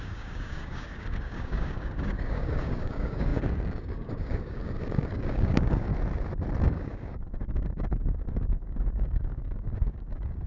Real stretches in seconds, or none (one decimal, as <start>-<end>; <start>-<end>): 5.9-6.6